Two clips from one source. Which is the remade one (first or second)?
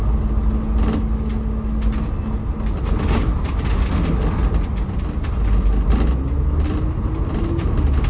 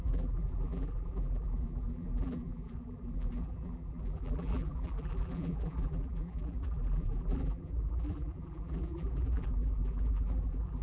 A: second